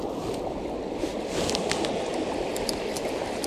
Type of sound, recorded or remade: recorded